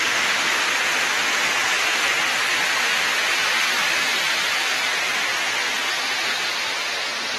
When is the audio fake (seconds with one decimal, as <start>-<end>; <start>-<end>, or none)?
none